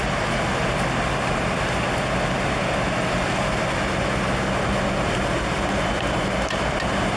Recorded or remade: recorded